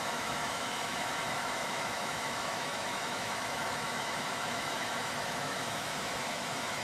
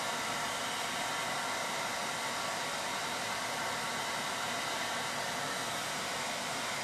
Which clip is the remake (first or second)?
first